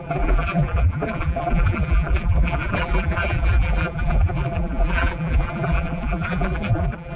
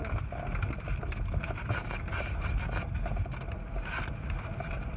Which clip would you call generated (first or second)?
first